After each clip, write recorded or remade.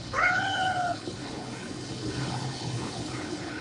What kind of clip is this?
remade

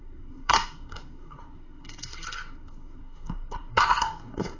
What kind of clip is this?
remade